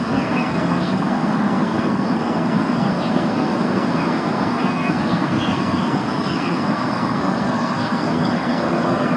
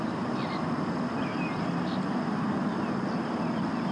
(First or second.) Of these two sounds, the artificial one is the first